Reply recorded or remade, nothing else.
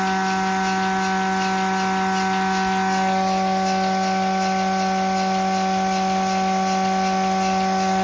recorded